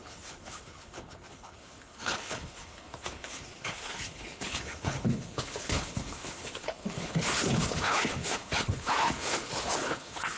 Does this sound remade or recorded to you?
remade